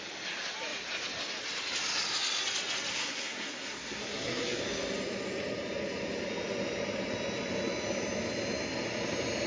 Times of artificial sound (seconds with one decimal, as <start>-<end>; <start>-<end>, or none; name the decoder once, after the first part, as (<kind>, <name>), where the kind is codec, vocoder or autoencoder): 2.9-4.6 (codec, SNAC)